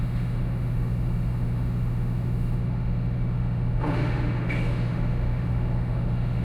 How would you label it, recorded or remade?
remade